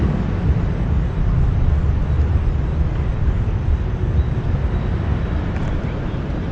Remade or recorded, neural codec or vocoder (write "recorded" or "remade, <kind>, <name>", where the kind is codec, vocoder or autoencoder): recorded